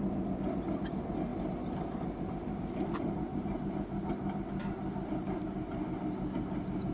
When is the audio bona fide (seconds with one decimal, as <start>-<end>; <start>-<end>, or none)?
0.0-6.9